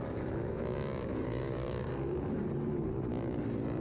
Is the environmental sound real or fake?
real